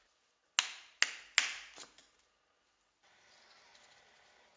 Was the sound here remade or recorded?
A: recorded